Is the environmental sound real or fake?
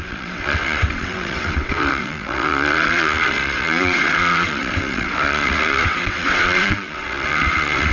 fake